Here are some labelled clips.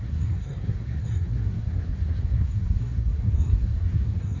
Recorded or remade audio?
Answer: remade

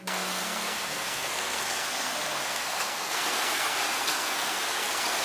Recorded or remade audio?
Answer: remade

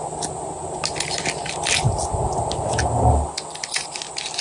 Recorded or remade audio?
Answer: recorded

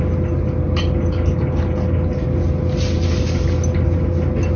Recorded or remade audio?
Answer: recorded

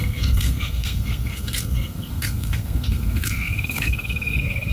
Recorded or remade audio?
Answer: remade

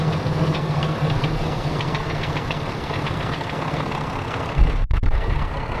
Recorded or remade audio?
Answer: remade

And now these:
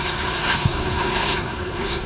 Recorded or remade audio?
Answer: remade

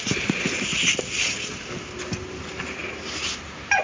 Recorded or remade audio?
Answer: recorded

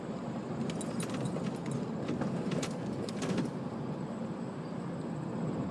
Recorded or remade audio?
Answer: recorded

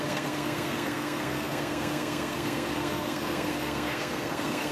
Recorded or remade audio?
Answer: remade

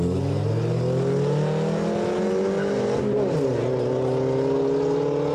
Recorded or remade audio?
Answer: recorded